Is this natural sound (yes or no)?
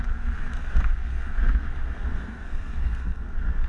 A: no